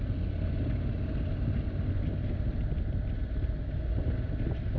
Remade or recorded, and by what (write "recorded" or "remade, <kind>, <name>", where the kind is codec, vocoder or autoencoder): recorded